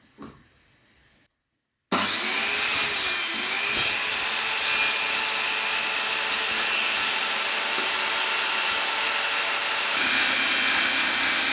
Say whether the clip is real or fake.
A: real